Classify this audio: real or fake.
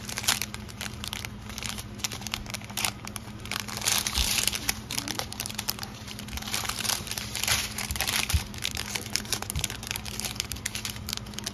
fake